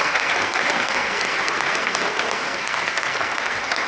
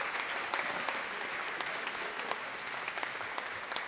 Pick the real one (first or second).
second